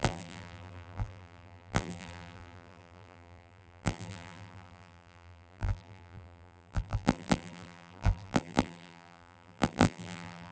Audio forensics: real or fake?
fake